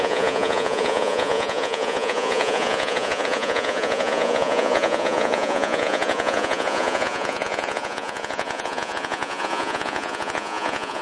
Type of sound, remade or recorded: remade